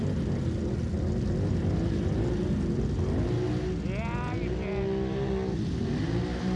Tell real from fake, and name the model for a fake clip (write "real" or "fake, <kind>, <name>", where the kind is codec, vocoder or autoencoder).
real